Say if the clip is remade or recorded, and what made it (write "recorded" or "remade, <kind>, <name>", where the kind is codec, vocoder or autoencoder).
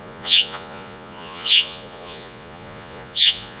remade, vocoder, Vocos